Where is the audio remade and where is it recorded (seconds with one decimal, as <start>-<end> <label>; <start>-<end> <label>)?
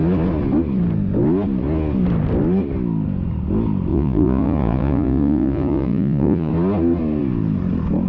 0.0-3.9 recorded; 3.9-6.5 remade; 6.5-8.1 recorded